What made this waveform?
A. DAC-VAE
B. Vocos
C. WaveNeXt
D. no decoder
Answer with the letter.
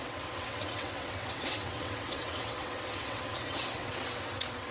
C